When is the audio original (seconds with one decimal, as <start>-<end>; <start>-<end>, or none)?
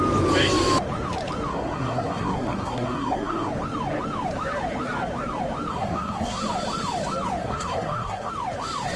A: 0.0-1.5; 3.5-5.7; 6.4-7.4; 8.3-9.0